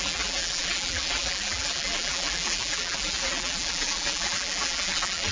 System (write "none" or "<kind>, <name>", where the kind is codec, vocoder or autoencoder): vocoder, BigVGAN v2